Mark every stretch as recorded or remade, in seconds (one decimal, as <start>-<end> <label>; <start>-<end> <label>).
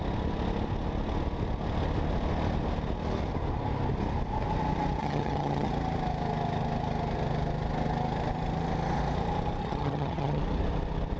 0.0-5.0 recorded; 5.0-5.7 remade; 5.7-9.6 recorded; 9.6-10.4 remade; 10.4-11.2 recorded